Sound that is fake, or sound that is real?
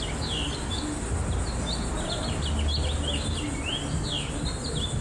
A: real